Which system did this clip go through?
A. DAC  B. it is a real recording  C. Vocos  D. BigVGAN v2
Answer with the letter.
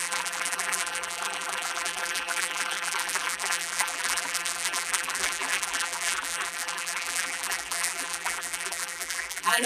D